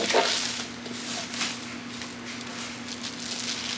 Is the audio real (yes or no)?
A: yes